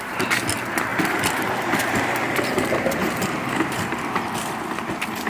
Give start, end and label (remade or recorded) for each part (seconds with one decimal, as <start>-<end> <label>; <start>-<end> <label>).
0.0-5.3 remade